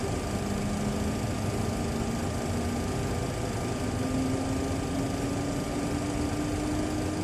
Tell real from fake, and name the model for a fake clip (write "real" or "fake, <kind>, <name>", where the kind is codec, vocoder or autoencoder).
real